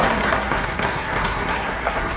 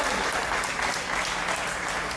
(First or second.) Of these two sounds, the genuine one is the second